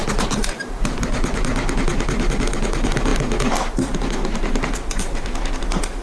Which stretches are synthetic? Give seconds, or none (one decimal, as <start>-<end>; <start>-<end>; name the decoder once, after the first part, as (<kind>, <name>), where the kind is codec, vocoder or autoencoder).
0.0-1.3 (vocoder, BigVGAN v2)